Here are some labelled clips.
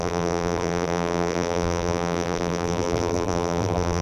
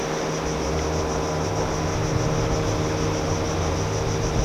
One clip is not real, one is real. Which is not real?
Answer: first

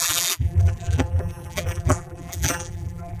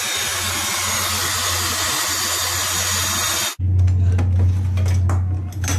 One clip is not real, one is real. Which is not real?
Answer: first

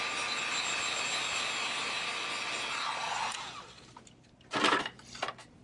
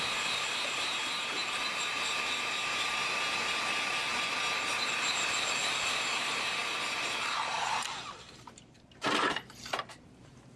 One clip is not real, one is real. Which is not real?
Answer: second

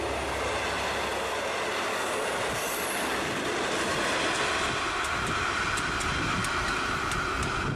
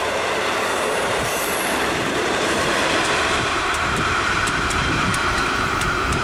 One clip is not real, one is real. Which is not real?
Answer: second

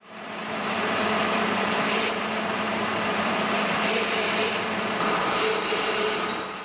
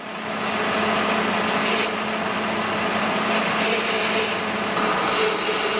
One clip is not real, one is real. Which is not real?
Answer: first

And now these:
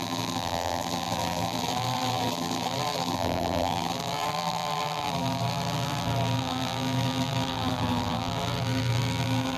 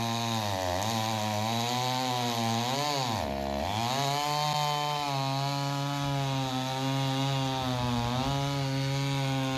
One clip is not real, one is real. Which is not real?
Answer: first